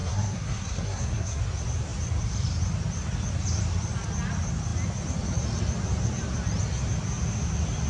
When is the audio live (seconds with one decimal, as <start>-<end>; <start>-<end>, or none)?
1.4-7.9